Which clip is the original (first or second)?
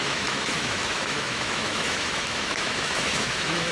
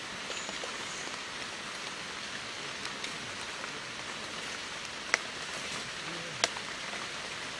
second